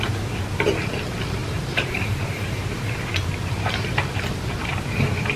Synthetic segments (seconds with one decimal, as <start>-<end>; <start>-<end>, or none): 1.4-3.0